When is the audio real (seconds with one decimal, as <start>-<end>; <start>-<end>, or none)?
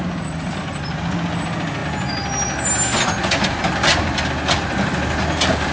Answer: 0.0-5.7